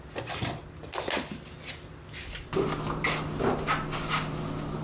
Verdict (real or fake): real